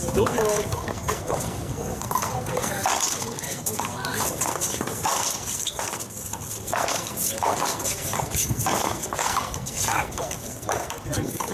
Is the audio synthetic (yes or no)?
yes